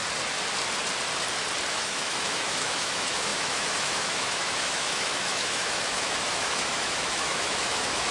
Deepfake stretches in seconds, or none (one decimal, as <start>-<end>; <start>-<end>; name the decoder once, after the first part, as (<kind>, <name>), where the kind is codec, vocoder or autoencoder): 1.7-8.1 (autoencoder, DAC-VAE)